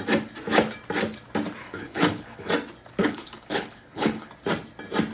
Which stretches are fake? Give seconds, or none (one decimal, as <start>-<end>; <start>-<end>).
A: 1.6-2.5; 3.0-4.3